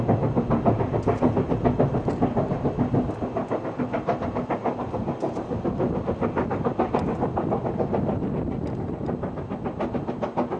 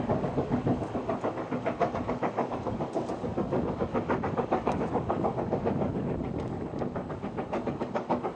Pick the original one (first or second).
first